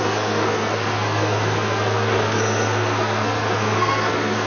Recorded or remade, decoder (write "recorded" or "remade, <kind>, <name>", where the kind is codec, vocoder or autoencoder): remade, codec, SNAC